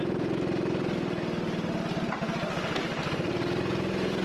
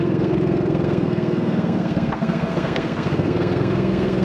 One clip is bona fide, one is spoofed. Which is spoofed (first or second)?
second